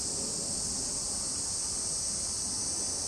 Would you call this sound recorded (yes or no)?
yes